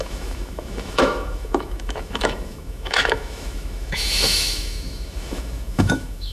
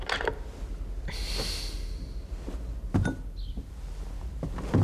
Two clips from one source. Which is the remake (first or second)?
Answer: first